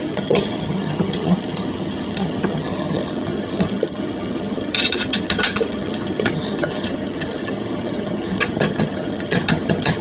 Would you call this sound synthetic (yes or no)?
yes